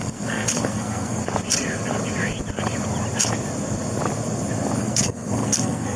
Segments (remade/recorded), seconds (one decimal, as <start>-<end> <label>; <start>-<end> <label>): 0.0-1.2 remade; 1.2-4.8 recorded; 4.8-6.0 remade